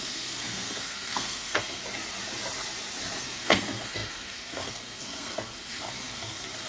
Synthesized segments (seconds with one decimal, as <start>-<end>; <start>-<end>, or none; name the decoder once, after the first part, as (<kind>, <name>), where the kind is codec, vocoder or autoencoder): 0.0-1.8 (codec, SNAC); 3.2-6.7